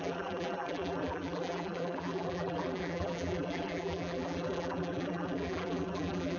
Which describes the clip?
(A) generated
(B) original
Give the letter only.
A